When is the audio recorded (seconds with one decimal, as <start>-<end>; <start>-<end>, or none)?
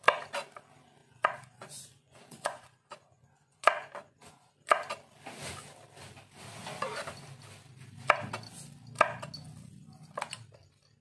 0.0-1.0; 4.5-11.0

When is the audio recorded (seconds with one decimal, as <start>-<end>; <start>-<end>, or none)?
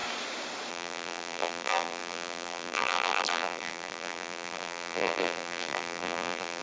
0.0-0.7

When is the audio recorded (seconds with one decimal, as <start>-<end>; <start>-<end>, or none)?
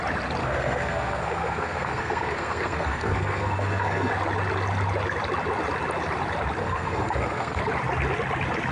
0.0-0.4; 4.1-6.6; 7.6-8.7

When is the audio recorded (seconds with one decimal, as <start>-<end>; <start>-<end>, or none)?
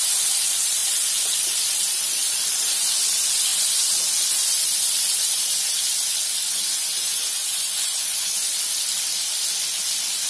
0.0-6.5; 8.5-10.3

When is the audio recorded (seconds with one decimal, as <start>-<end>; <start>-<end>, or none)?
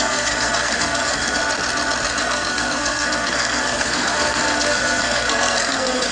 1.4-2.2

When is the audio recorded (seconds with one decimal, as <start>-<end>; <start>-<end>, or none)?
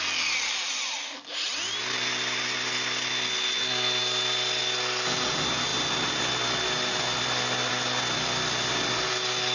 0.0-9.5